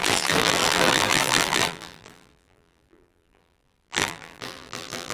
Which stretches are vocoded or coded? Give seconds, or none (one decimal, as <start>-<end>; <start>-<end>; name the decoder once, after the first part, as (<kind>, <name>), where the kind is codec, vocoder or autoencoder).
0.0-5.1 (vocoder, BigVGAN v2)